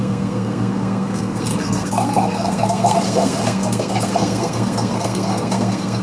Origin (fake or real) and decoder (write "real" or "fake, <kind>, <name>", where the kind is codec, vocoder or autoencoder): fake, codec, SNAC